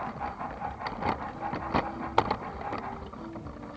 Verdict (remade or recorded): recorded